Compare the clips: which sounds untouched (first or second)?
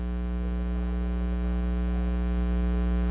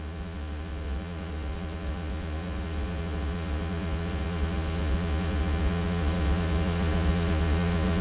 first